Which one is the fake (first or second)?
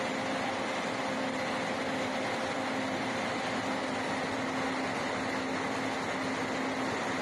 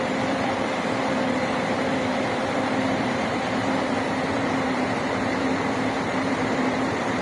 second